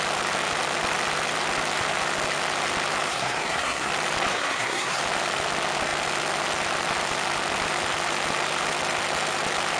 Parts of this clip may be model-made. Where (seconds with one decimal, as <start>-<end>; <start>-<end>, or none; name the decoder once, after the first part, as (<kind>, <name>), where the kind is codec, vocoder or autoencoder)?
3.1-3.9 (codec, SNAC); 4.3-5.0